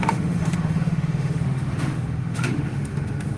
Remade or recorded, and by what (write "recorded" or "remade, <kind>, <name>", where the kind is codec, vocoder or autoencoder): remade, autoencoder, DAC-VAE